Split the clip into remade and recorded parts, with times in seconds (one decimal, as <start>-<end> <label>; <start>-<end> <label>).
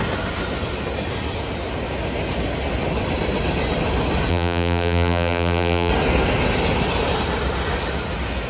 0.0-4.3 recorded; 4.3-5.9 remade; 5.9-8.5 recorded